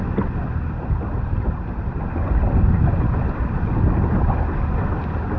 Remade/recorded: recorded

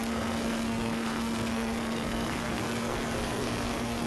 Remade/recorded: remade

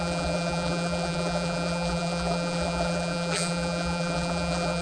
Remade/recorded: remade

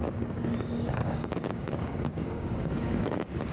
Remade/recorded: remade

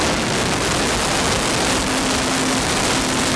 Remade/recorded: recorded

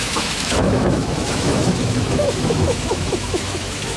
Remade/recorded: remade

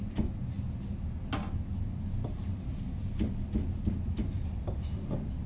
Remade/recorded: recorded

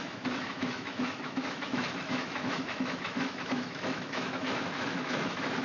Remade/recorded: remade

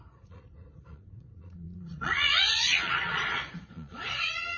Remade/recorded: remade